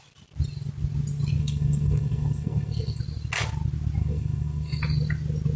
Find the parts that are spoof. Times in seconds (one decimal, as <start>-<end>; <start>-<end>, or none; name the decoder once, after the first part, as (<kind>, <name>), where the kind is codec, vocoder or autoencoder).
1.4-3.0 (codec, SNAC); 4.0-4.8